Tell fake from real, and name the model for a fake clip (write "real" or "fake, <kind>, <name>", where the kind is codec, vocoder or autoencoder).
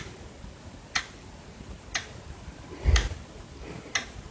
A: real